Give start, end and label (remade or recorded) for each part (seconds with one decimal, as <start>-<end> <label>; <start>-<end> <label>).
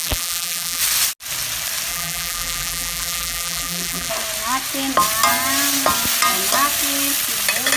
0.0-0.8 remade; 0.8-1.9 recorded; 1.9-4.1 remade; 4.1-7.8 recorded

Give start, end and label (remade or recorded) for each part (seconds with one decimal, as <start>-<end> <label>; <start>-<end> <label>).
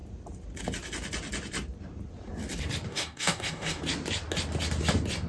0.0-2.9 recorded; 2.9-3.8 remade; 3.8-5.3 recorded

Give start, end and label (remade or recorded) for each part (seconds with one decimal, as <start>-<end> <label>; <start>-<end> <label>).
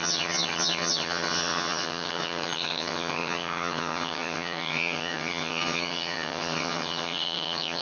0.0-7.8 remade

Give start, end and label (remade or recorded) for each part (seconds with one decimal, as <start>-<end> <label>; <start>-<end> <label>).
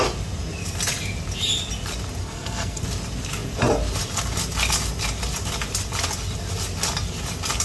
0.0-2.2 recorded; 2.2-2.8 remade; 2.8-7.6 recorded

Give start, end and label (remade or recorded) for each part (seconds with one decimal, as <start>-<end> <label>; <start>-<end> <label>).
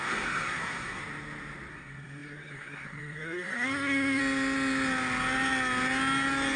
0.0-1.0 remade; 1.0-1.7 recorded; 1.7-4.2 remade; 4.2-6.6 recorded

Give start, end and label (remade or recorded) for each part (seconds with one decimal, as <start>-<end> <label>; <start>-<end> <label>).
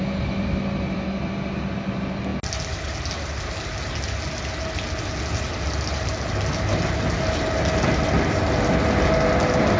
0.0-9.8 recorded